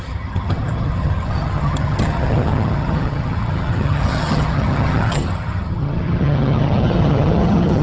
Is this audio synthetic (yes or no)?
yes